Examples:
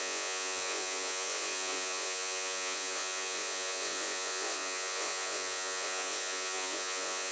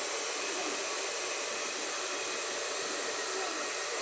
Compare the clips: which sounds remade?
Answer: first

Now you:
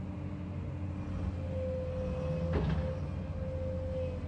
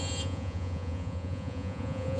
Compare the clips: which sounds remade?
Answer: second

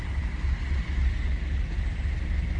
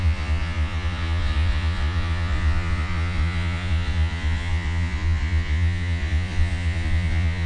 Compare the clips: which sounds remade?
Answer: second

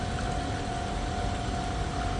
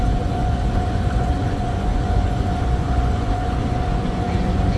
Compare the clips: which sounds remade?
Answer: second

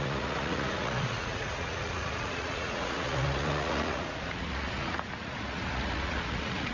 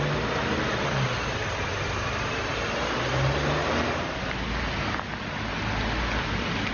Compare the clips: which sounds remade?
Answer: first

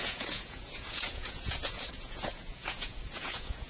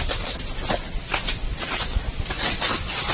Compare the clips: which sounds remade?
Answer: first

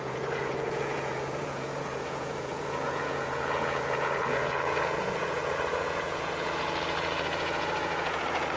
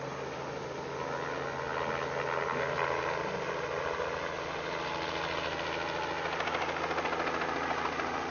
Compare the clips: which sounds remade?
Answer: first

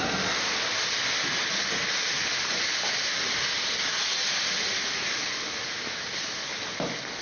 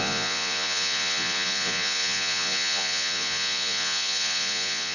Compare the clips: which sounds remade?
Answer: second